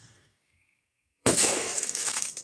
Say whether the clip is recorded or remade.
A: remade